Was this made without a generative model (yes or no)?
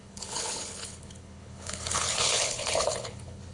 no